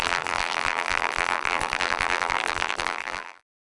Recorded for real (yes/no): no